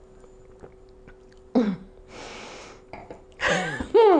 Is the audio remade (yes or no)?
no